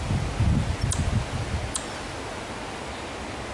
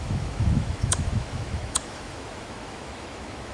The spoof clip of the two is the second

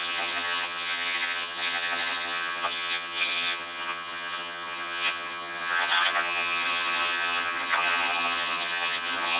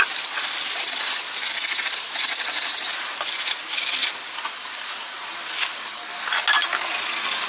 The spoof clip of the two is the first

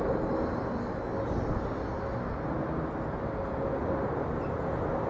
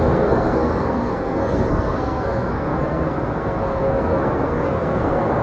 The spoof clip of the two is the second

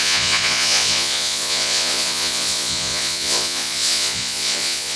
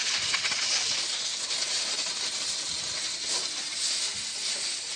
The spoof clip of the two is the first